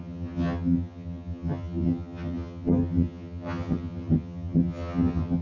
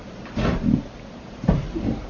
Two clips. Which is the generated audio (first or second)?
first